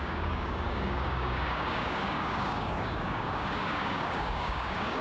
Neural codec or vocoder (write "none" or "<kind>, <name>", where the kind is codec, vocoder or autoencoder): codec, DAC